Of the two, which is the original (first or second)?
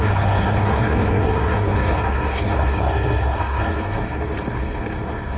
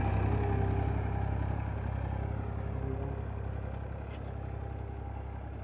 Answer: second